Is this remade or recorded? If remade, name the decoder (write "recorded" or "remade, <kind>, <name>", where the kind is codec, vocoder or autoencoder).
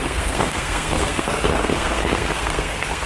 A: remade, codec, SNAC